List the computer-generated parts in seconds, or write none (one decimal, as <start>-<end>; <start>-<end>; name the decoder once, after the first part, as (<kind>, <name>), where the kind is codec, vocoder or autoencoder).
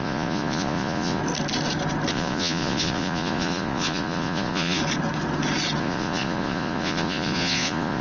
0.0-1.2 (vocoder, Vocos); 2.1-4.8; 5.8-8.0